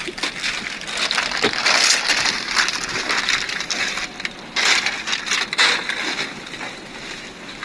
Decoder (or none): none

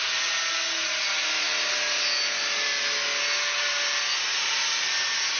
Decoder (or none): none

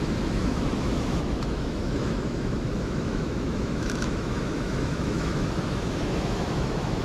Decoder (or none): autoencoder, DAC-VAE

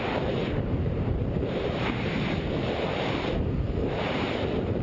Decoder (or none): vocoder, BigVGAN v2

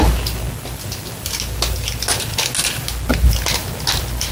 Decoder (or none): none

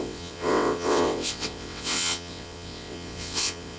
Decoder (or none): vocoder, WaveNeXt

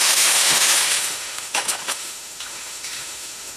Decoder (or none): autoencoder, DAC-VAE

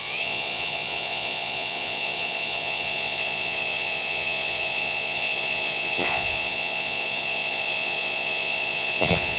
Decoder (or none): vocoder, Vocos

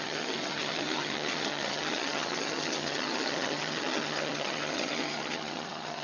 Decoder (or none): vocoder, HiFi-GAN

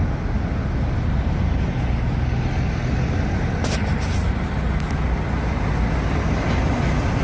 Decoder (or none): none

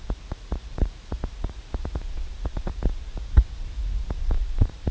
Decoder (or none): vocoder, Vocos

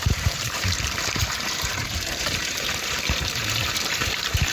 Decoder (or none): vocoder, BigVGAN v2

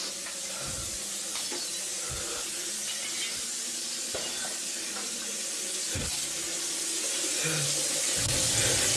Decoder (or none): none